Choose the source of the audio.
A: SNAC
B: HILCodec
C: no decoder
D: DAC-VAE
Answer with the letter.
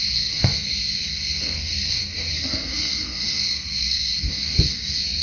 A